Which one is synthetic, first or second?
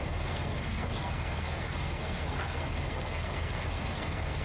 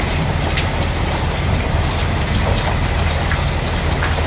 first